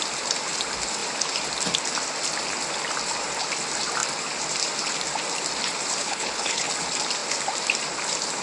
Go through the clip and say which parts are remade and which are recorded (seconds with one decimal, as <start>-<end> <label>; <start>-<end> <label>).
0.0-6.0 recorded; 6.0-6.7 remade; 6.7-8.4 recorded